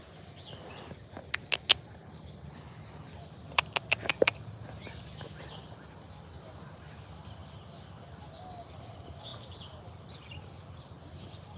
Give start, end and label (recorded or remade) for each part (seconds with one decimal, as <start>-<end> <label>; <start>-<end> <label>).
0.0-11.6 recorded